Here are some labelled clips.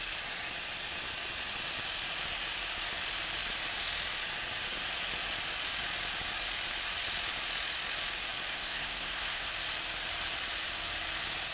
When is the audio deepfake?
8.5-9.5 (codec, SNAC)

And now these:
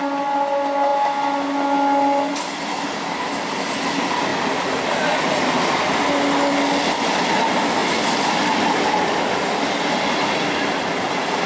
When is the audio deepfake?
none

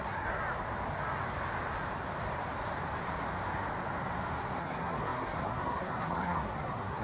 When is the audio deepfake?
0.0-0.4 (codec, SNAC); 4.6-7.0